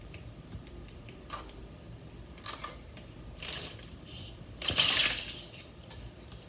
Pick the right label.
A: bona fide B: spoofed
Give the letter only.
B